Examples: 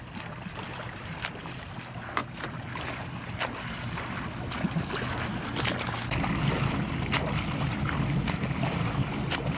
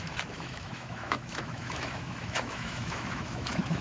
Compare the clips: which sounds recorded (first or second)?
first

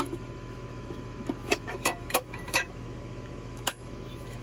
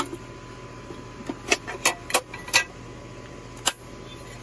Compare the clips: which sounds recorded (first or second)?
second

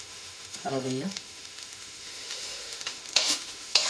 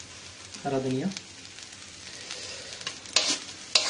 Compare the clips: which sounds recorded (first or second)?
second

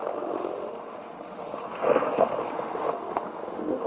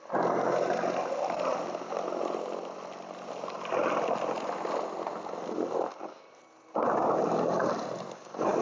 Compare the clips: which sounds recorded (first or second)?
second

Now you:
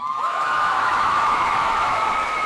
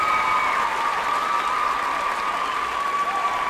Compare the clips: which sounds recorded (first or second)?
second